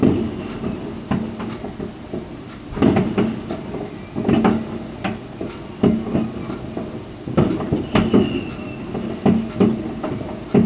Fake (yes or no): no